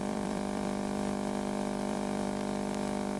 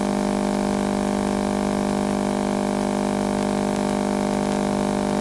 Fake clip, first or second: first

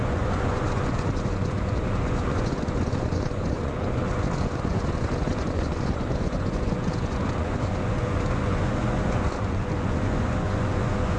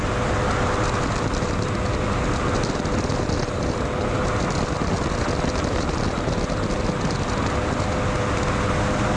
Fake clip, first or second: first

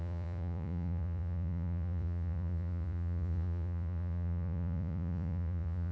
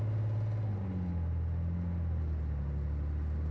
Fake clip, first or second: first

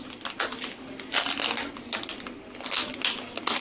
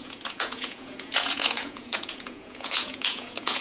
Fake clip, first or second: second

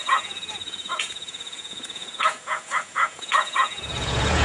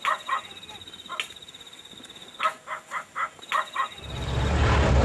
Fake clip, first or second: first